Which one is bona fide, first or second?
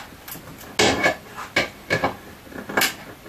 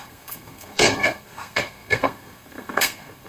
first